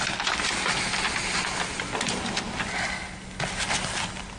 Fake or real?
real